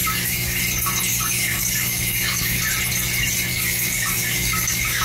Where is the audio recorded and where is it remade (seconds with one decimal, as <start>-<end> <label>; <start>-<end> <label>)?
0.0-0.6 remade; 0.6-1.1 recorded; 1.1-2.6 remade; 2.6-3.5 recorded; 3.5-5.0 remade